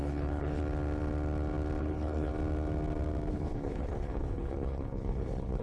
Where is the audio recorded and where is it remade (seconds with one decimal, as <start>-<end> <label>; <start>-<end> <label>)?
0.0-0.6 remade; 0.6-1.8 recorded; 1.8-2.3 remade; 2.3-3.3 recorded; 3.3-5.6 remade